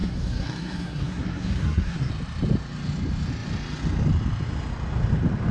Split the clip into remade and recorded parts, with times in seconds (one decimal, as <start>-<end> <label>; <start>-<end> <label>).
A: 0.0-2.1 remade; 2.1-5.5 recorded